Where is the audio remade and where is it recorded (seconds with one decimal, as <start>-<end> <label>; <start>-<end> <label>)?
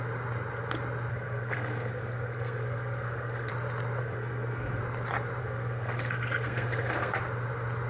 0.0-1.1 recorded; 1.1-3.5 remade; 3.5-4.0 recorded; 4.0-4.8 remade; 4.8-5.4 recorded; 5.4-7.1 remade; 7.1-7.9 recorded